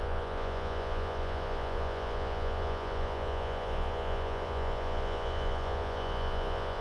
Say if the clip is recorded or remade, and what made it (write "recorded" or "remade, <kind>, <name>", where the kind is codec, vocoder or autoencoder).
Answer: remade, vocoder, Vocos